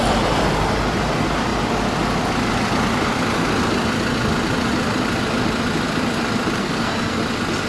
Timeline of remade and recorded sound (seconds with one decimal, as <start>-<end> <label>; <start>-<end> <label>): 0.0-6.6 recorded; 6.6-7.2 remade; 7.2-7.7 recorded